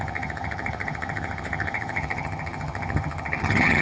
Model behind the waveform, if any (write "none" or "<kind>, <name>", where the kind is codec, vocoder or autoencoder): vocoder, HiFi-GAN